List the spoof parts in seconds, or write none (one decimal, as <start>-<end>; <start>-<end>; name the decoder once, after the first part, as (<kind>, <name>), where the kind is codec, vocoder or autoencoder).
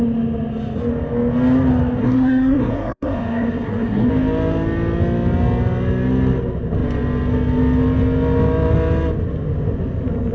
2.0-4.1 (codec, SNAC)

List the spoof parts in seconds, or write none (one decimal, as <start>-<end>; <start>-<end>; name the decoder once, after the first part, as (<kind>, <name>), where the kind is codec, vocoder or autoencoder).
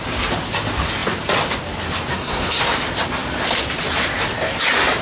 2.1-2.6 (codec, SNAC)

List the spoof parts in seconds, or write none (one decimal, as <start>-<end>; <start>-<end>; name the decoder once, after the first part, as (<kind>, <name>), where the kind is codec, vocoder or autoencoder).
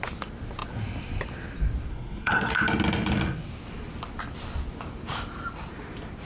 1.9-2.5 (codec, SNAC)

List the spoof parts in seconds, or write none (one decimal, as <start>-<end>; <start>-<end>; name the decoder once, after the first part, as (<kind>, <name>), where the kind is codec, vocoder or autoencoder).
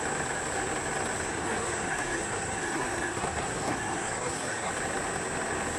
1.3-4.7 (codec, SNAC)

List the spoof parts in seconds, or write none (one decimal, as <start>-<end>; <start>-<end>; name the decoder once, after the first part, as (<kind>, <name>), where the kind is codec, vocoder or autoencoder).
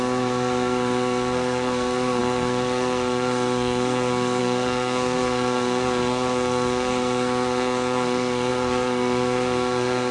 0.0-10.1 (codec, SNAC)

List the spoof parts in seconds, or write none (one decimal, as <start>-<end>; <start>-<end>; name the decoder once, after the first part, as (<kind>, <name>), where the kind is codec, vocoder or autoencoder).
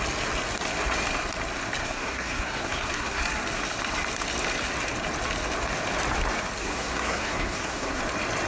1.8-3.2 (codec, SNAC); 6.6-8.0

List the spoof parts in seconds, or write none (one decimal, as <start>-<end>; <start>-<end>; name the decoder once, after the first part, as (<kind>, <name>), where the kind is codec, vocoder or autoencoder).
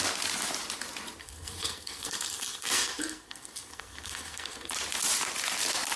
1.2-4.7 (codec, SNAC)